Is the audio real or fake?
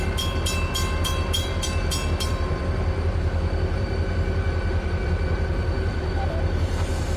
fake